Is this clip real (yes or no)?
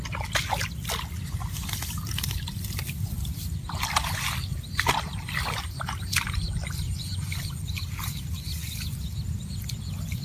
yes